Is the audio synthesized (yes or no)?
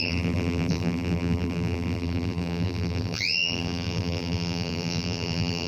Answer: yes